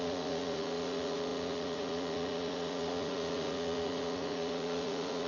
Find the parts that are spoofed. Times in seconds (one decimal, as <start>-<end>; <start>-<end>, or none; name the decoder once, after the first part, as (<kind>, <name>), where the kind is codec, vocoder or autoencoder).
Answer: 0.0-5.3 (vocoder, Vocos)